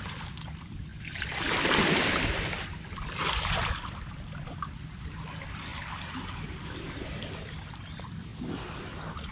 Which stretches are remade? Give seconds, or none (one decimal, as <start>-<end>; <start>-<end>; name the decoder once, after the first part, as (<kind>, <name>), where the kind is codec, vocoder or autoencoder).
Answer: 0.0-8.3 (vocoder, BigVGAN v2); 8.8-9.3